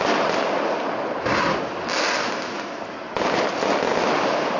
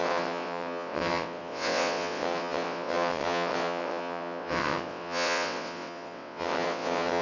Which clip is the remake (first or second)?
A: second